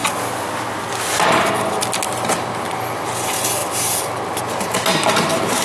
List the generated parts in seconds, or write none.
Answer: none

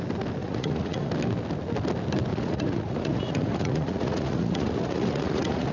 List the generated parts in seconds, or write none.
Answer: 0.4-1.1; 2.3-5.7